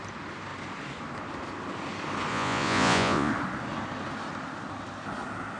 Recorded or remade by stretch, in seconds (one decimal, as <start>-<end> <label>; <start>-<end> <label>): 0.0-2.3 recorded; 2.3-3.3 remade; 3.3-5.6 recorded